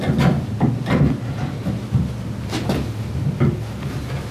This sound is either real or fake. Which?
real